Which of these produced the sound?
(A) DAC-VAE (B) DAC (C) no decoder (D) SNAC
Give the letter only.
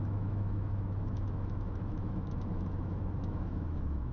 A